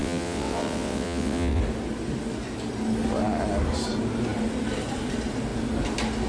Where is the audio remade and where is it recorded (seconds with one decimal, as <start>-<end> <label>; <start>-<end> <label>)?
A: 0.0-1.6 remade; 1.6-6.3 recorded

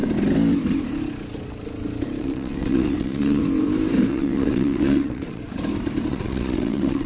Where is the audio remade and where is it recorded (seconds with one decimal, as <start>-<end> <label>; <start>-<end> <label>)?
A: 0.0-2.2 recorded; 2.2-3.4 remade; 3.4-4.1 recorded; 4.1-5.4 remade; 5.4-6.1 recorded; 6.1-7.1 remade

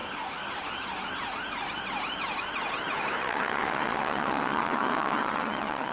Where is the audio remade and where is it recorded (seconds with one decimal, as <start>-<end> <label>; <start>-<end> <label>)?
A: 0.0-3.2 recorded; 3.2-5.9 remade

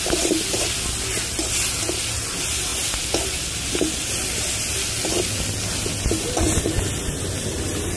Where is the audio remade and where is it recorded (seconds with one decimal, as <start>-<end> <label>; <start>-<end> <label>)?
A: 0.0-8.0 recorded

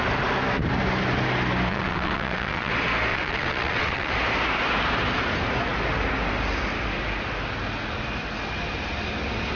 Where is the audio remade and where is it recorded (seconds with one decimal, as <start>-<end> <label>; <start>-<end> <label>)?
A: 0.0-1.7 recorded; 1.7-2.7 remade; 2.7-3.1 recorded; 3.1-4.1 remade; 4.1-9.6 recorded

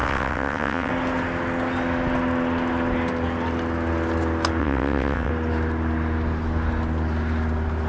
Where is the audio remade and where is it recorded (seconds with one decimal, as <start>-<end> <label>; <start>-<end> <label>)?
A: 0.0-0.9 remade; 0.9-4.6 recorded; 4.6-5.3 remade; 5.3-7.9 recorded

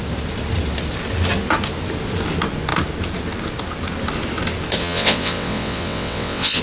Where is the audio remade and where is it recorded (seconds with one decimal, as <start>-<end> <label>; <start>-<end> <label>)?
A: 0.0-4.8 recorded; 4.8-6.6 remade